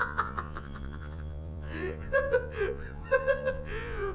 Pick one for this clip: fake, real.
fake